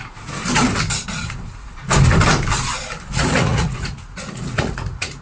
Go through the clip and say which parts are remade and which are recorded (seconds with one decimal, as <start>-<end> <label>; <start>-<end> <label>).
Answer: 0.0-3.1 recorded; 3.1-5.2 remade